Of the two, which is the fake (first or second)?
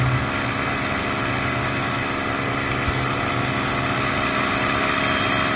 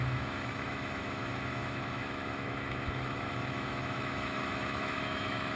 second